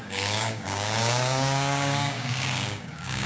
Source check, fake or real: fake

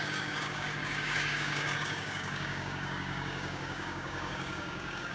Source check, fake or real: fake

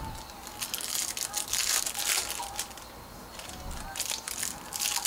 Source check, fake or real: real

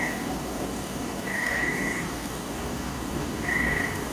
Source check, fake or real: fake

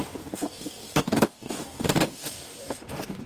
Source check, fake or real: fake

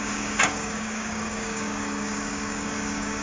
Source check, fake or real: fake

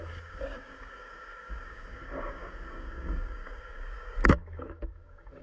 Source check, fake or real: fake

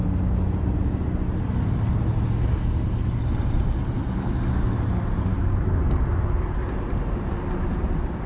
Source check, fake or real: real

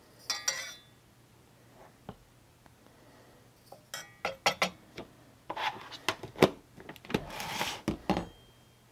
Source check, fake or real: real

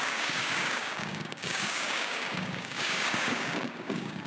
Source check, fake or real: fake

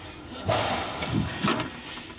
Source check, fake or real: real